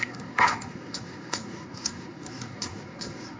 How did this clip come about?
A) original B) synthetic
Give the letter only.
B